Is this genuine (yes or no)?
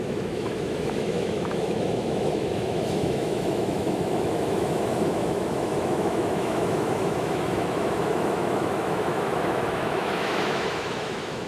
no